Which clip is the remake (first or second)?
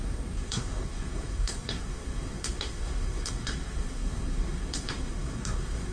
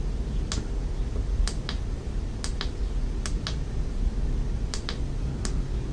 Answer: first